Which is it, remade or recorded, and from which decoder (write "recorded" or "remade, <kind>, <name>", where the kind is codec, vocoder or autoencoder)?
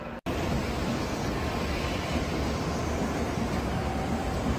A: recorded